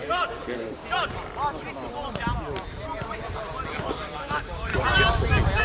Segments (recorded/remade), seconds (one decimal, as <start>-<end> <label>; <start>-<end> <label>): 0.0-0.8 remade; 0.8-3.9 recorded; 3.9-4.7 remade; 4.7-5.6 recorded